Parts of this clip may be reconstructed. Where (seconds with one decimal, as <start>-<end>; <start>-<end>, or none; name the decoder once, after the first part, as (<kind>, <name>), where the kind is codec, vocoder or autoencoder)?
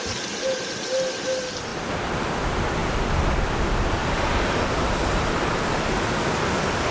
4.0-5.3 (vocoder, BigVGAN v2)